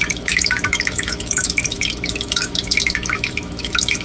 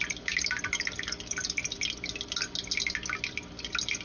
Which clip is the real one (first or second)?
second